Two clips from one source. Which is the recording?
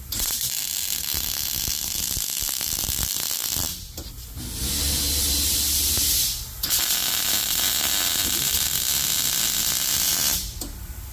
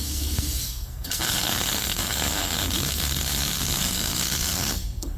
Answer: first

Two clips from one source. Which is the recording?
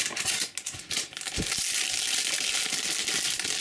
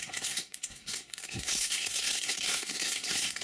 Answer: first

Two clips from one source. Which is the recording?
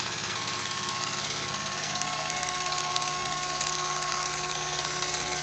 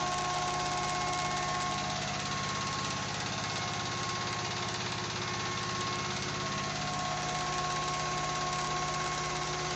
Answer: second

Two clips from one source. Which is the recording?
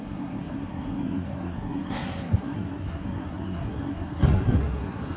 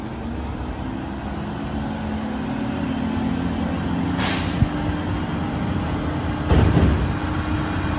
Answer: second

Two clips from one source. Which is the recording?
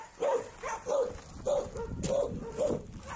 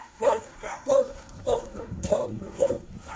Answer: first